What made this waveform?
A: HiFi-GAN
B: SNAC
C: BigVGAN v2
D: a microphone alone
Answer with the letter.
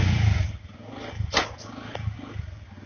D